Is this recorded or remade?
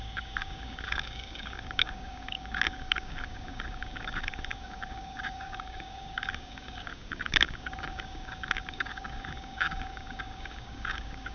remade